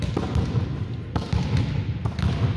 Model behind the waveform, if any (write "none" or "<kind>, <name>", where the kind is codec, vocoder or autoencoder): none